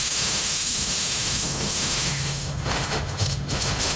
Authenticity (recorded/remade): remade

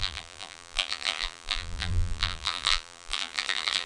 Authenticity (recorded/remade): remade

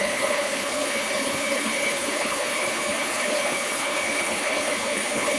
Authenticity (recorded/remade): remade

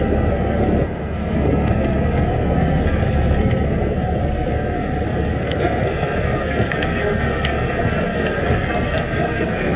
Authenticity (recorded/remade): remade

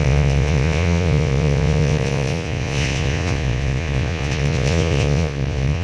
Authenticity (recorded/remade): remade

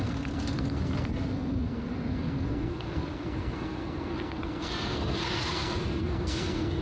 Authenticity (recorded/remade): remade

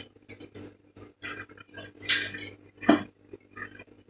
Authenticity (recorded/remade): recorded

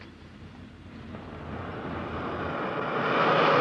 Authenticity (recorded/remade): recorded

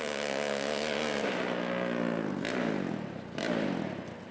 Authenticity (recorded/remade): recorded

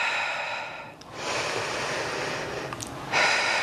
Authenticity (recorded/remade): recorded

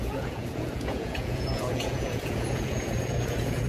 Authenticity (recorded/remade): remade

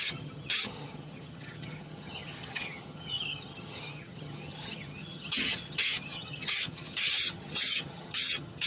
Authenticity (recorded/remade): remade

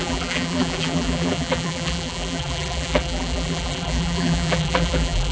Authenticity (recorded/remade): remade